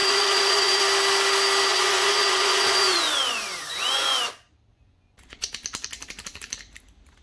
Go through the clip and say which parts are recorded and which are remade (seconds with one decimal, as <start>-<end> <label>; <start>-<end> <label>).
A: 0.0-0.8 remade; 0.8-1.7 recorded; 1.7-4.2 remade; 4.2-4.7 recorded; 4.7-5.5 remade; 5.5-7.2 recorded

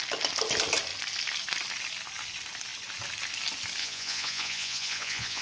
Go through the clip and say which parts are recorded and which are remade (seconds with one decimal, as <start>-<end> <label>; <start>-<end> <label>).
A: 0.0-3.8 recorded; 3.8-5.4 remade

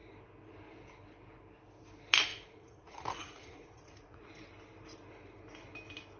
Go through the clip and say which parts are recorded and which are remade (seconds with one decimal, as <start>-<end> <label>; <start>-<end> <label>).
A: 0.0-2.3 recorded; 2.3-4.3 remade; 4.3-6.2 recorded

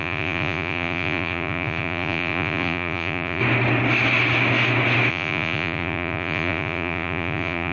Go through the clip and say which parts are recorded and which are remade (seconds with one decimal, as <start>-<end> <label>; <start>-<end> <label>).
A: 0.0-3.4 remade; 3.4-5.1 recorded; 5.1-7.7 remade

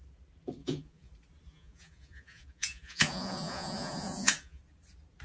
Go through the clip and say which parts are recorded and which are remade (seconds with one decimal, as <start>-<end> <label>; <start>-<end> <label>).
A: 0.0-0.6 recorded; 0.6-1.1 remade; 1.1-1.5 recorded; 1.5-4.6 remade; 4.6-5.2 recorded

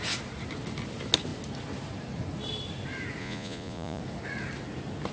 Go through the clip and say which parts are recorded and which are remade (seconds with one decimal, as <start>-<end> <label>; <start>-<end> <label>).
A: 0.0-3.2 recorded; 3.2-4.0 remade; 4.0-5.1 recorded